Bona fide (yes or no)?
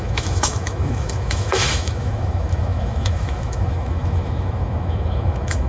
no